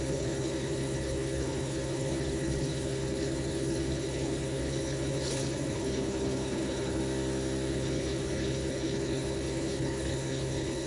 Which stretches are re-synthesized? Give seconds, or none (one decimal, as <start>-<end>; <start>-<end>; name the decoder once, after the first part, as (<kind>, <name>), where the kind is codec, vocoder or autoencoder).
0.0-7.0 (codec, HILCodec); 7.7-10.9